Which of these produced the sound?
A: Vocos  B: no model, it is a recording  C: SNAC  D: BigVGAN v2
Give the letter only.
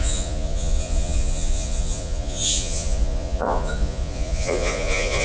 A